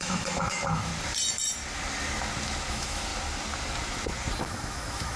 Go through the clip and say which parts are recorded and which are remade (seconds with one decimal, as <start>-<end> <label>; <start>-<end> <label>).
0.0-0.9 remade; 0.9-2.7 recorded; 2.7-3.1 remade; 3.1-4.4 recorded; 4.4-5.2 remade